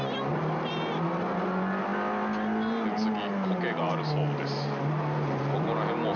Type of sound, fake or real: real